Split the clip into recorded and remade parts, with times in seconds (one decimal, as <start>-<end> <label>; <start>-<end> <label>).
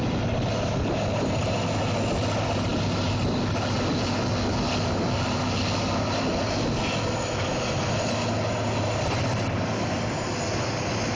0.0-11.2 recorded